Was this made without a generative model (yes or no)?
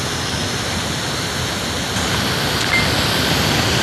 yes